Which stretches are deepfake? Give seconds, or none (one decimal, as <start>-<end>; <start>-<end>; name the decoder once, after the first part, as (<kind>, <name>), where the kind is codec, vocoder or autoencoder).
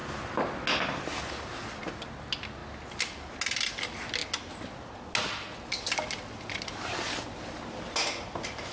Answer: none